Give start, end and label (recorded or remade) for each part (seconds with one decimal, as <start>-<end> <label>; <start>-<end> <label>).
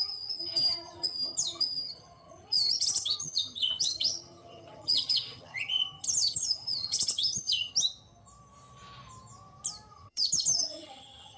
0.0-7.7 remade; 7.7-9.9 recorded; 9.9-11.4 remade